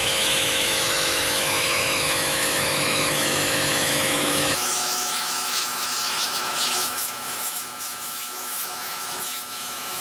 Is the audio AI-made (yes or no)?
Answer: yes